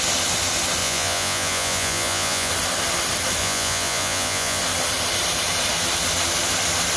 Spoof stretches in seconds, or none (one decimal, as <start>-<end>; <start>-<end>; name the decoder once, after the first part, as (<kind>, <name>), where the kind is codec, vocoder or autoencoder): 0.8-2.5 (vocoder, Vocos); 3.4-4.6